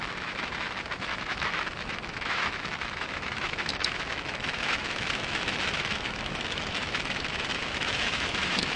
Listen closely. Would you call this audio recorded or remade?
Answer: remade